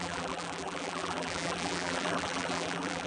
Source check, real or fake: fake